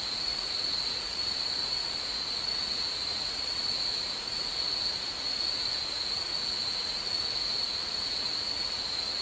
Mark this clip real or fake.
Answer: fake